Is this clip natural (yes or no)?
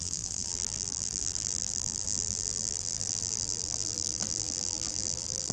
no